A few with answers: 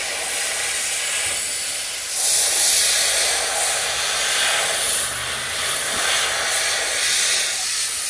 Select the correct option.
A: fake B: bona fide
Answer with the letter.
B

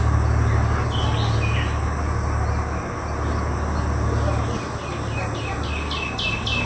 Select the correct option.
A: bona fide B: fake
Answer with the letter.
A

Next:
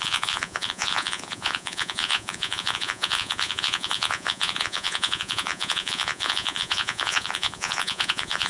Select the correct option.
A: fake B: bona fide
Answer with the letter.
A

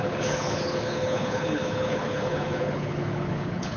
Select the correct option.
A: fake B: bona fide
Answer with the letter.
A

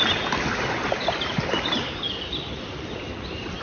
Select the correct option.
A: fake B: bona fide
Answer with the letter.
A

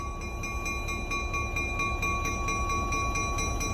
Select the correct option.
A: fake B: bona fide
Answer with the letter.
B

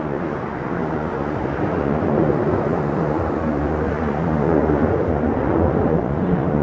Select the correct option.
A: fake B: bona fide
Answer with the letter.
A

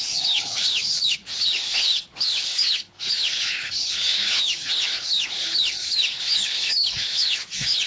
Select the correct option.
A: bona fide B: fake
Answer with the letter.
B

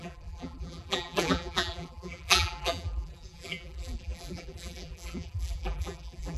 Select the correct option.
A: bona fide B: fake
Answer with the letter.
B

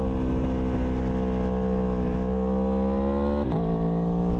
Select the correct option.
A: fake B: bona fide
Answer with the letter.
B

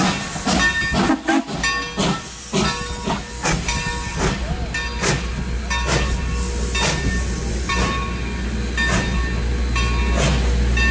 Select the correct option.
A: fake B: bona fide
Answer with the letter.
B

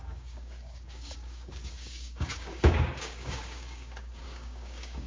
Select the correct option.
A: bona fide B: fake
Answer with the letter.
B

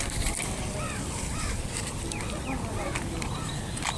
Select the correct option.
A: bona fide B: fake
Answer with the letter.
B